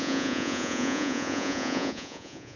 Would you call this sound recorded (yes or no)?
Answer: no